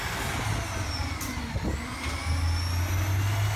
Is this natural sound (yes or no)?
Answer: yes